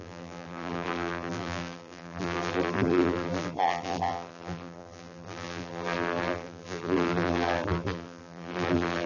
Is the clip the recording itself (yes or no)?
no